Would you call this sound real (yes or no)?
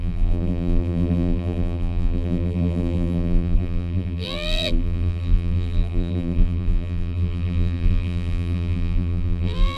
no